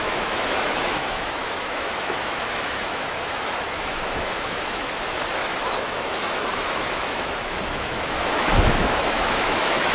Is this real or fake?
fake